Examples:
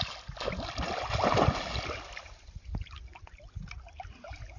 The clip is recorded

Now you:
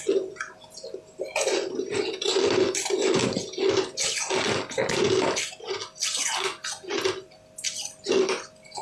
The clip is recorded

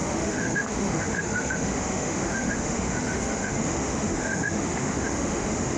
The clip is remade